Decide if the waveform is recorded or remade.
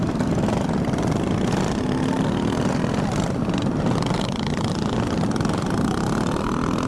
recorded